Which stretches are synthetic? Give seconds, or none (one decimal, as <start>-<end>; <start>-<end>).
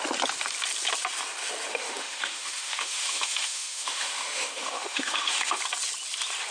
1.7-5.6